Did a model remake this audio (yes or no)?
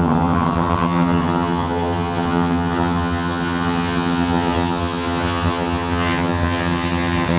yes